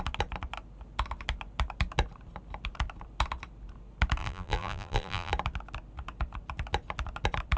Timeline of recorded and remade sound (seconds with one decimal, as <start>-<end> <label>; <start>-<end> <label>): 0.0-4.2 recorded; 4.2-5.3 remade; 5.3-7.6 recorded